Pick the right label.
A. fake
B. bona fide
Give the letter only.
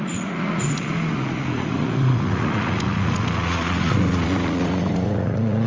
A